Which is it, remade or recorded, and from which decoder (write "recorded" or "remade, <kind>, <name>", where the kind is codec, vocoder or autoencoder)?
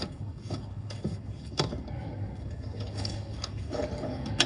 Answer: remade, codec, DAC